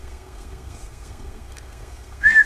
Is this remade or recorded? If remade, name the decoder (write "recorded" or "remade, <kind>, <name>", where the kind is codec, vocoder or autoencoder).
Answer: remade, codec, SNAC